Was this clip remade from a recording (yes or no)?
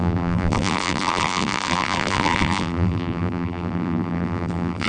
yes